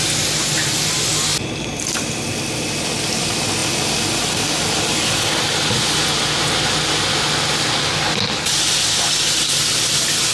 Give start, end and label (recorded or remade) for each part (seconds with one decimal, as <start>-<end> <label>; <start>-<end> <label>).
0.0-10.3 recorded